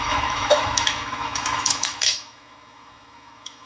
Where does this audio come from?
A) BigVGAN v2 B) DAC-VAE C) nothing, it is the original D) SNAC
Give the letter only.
B